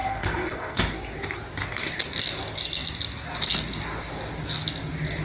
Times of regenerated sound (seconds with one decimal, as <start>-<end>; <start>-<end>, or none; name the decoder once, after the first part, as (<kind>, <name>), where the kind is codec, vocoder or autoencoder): 0.0-0.8 (codec, SNAC)